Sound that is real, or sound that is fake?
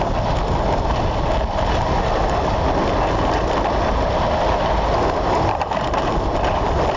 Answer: real